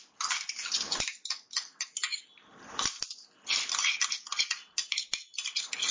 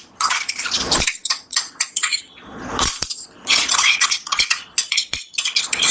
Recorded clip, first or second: first